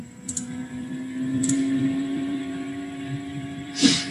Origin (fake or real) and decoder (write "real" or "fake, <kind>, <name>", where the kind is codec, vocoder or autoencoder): fake, vocoder, BigVGAN v2